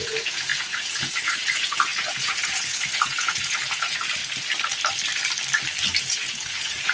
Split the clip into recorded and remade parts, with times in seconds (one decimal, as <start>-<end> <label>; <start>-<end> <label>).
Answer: 0.0-4.2 remade; 4.2-6.0 recorded; 6.0-6.9 remade